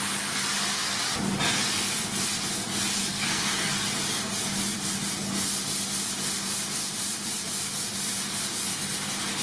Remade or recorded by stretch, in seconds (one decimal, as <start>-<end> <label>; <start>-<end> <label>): 0.0-3.1 recorded; 3.1-3.7 remade; 3.7-9.4 recorded